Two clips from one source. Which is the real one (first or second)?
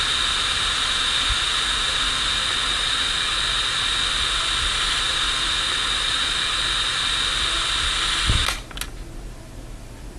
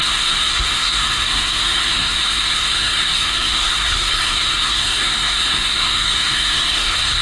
first